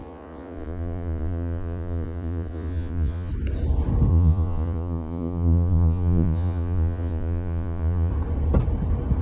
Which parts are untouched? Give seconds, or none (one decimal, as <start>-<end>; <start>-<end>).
3.3-4.1; 8.1-9.2